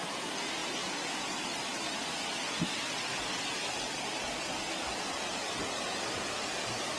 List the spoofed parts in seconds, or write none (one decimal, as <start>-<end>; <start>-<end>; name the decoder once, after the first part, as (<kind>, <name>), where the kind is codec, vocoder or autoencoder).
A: none